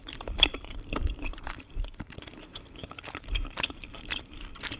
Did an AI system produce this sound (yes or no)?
yes